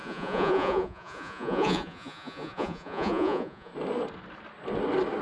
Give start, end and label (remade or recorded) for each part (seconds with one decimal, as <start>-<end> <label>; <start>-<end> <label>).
0.0-3.7 remade; 3.7-5.2 recorded